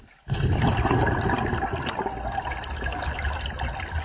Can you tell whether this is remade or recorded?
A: recorded